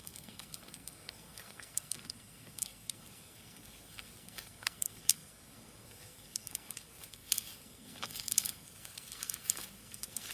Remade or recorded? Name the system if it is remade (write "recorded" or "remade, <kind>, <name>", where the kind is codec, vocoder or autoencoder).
remade, codec, SNAC